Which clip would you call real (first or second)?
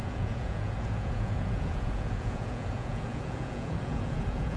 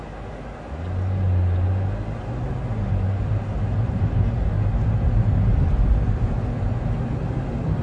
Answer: second